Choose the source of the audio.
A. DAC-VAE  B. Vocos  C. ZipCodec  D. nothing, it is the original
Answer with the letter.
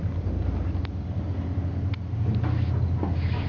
D